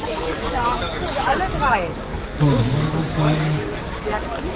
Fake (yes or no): yes